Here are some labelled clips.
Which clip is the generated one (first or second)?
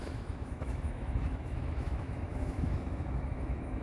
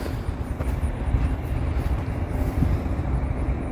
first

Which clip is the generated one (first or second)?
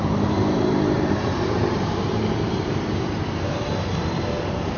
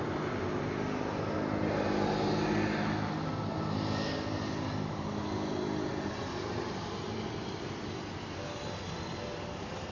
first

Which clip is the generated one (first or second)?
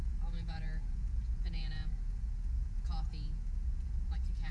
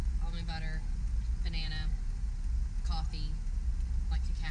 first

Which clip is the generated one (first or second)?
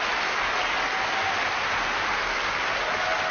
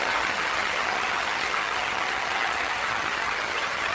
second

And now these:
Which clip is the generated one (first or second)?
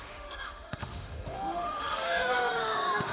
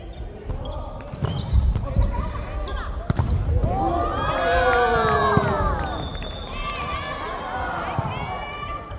first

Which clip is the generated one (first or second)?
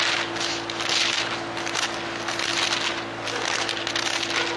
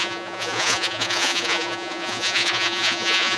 second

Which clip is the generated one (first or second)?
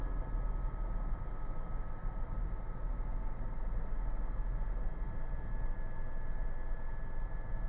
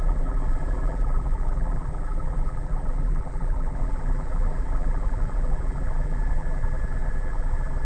second